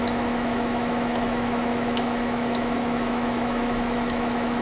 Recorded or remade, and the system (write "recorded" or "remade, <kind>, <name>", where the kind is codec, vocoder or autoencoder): remade, autoencoder, DAC-VAE